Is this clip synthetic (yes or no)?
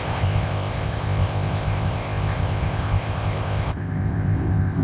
yes